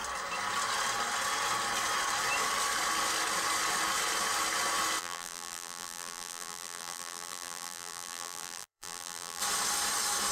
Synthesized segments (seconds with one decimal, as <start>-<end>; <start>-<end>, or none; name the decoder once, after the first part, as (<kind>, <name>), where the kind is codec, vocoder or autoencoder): 5.0-9.4 (vocoder, BigVGAN v2)